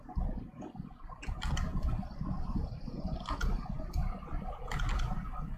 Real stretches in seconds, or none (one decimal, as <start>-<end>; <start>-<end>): 0.0-5.6